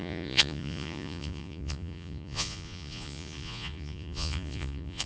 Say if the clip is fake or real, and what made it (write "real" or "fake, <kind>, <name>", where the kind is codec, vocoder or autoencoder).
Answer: fake, vocoder, Vocos